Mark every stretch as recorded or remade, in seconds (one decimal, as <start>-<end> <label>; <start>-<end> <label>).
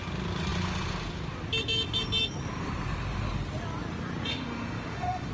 0.0-4.3 recorded; 4.3-5.3 remade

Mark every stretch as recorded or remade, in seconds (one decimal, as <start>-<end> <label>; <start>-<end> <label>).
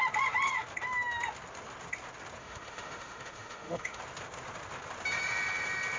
0.0-2.4 recorded; 2.4-4.0 remade; 4.0-6.0 recorded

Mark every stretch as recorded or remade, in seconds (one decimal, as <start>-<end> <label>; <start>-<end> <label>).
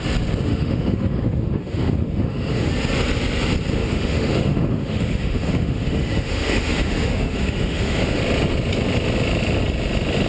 0.0-0.5 recorded; 0.5-2.7 remade; 2.7-3.8 recorded; 3.8-8.2 remade; 8.2-10.3 recorded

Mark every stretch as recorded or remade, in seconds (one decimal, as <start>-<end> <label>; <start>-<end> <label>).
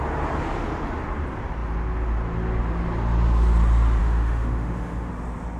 0.0-4.0 recorded; 4.0-5.1 remade; 5.1-5.6 recorded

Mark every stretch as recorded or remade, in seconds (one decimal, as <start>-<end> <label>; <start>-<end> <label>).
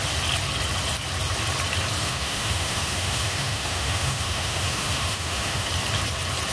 0.0-2.0 recorded; 2.0-5.7 remade; 5.7-6.5 recorded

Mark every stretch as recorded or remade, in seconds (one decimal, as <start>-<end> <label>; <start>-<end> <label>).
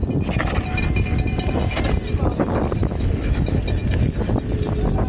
0.0-2.8 recorded; 2.8-3.6 remade; 3.6-5.1 recorded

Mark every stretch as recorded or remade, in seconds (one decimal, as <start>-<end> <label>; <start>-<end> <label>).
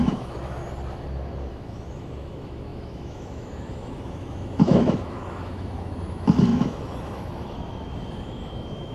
0.0-0.6 remade; 0.6-1.5 recorded; 1.5-8.9 remade